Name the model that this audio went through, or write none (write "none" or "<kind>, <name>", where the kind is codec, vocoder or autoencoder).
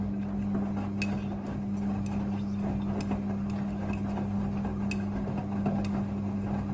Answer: none